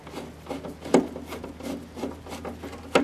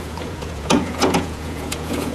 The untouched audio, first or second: first